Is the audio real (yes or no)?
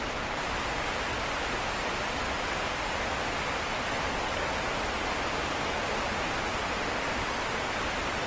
no